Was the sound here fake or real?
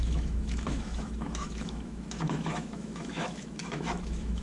fake